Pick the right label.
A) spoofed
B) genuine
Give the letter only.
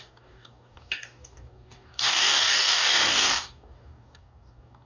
A